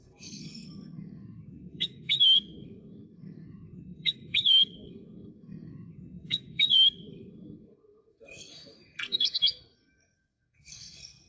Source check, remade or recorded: remade